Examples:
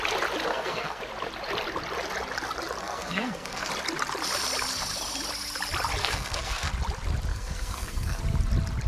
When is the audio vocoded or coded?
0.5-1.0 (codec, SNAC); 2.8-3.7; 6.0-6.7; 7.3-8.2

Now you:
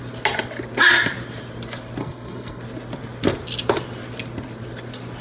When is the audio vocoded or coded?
2.0-2.6 (codec, SNAC)

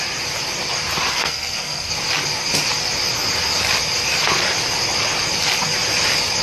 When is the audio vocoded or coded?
1.1-1.9 (codec, SNAC)

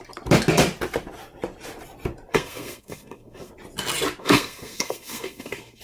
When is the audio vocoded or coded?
2.3-3.5 (codec, SNAC); 4.2-5.8

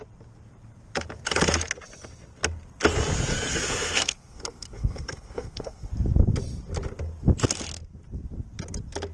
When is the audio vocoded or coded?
3.5-5.9 (codec, SNAC)

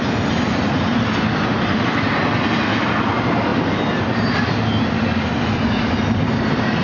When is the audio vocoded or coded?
none

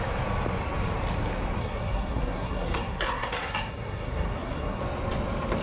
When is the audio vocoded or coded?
1.6-4.8 (codec, SNAC)